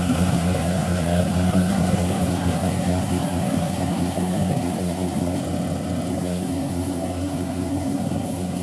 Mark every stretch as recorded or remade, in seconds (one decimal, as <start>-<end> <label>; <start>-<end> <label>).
0.0-5.4 remade; 5.4-6.1 recorded; 6.1-8.6 remade